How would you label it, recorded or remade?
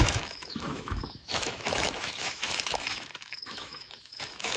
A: remade